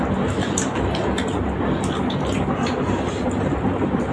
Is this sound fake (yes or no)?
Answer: no